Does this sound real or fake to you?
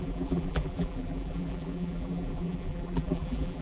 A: fake